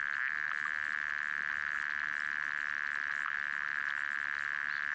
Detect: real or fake real